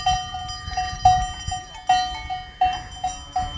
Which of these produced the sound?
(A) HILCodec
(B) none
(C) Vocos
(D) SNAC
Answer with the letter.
B